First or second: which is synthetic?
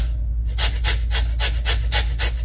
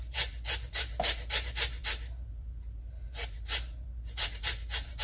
second